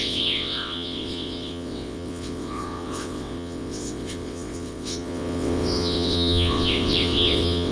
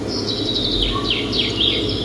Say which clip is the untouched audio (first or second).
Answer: second